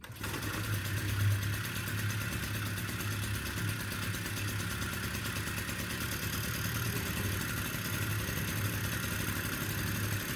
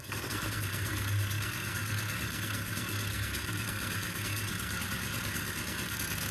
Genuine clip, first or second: first